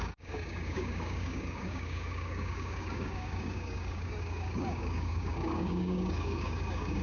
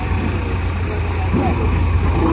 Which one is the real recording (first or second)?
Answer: second